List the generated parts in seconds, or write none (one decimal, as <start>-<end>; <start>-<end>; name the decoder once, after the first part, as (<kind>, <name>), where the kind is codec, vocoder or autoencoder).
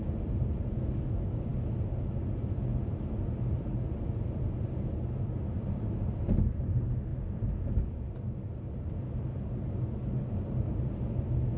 none